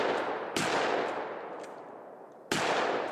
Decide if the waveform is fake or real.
real